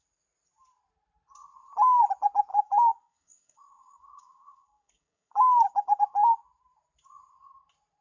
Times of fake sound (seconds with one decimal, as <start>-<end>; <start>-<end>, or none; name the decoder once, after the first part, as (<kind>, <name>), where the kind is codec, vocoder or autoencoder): 2.5-6.0 (codec, DAC)